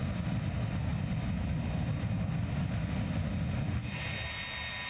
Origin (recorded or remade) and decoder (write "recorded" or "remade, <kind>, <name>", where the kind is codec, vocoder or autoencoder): recorded